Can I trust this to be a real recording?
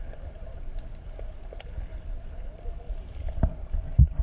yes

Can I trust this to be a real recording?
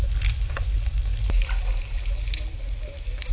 yes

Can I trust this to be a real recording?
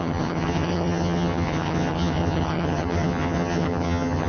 no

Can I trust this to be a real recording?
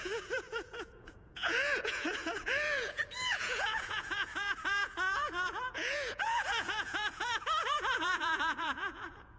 no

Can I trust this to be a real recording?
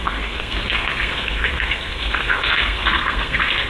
no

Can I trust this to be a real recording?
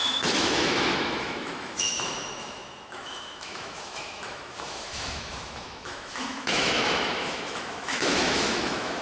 no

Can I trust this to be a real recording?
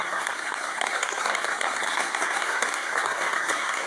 no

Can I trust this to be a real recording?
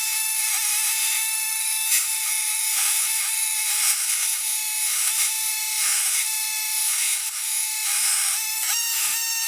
no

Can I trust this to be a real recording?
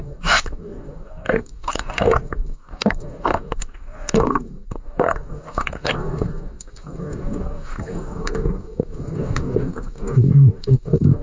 no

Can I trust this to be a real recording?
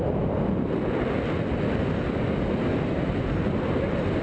yes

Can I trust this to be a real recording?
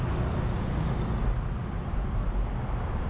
yes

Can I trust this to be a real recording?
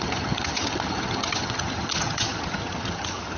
no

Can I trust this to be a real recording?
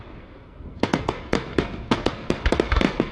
no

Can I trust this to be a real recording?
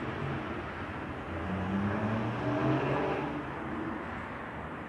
yes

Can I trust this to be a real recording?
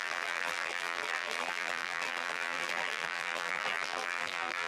no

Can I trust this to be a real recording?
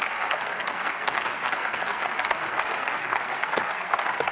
no